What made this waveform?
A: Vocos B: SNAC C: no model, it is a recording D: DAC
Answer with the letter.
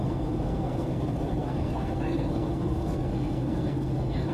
B